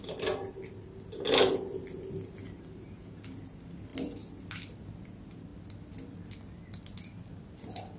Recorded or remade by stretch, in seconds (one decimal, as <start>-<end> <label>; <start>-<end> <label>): 0.0-8.0 recorded

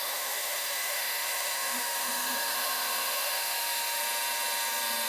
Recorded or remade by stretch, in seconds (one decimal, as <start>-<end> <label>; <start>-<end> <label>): 0.0-4.0 remade; 4.0-5.1 recorded

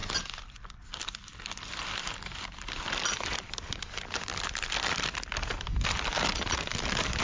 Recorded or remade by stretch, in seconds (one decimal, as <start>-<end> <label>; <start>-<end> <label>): 0.0-3.5 remade; 3.5-4.3 recorded; 4.3-7.2 remade

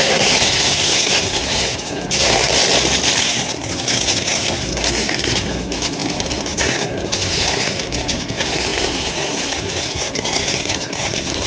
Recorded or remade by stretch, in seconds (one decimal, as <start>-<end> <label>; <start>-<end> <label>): 0.0-2.5 remade; 2.5-3.2 recorded; 3.2-11.5 remade